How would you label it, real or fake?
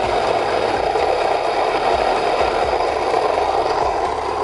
real